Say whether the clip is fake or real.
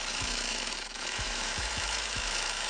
fake